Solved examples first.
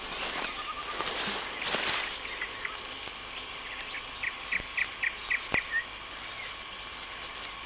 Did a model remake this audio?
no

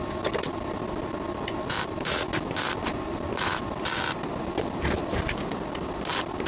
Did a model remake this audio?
no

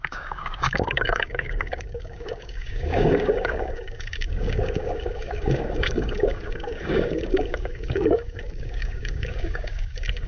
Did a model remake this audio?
yes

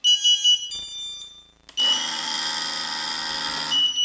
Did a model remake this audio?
no